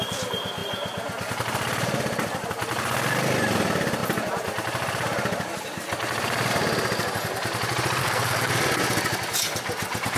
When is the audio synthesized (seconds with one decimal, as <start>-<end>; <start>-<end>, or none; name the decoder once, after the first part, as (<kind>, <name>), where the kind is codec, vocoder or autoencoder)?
8.0-8.5 (codec, SNAC)